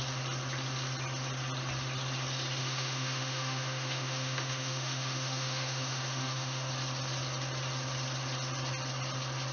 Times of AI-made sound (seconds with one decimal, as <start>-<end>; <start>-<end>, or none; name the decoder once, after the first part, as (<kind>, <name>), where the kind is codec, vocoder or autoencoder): 2.6-6.7 (autoencoder, DAC-VAE)